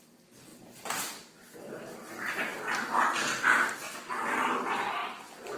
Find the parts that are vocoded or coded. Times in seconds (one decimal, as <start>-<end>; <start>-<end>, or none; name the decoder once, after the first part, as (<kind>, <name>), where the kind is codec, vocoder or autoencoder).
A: none